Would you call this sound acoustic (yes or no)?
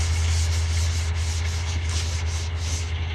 yes